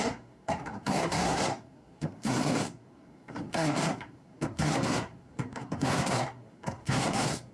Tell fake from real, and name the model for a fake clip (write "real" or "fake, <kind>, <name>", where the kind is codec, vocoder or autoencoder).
fake, codec, SNAC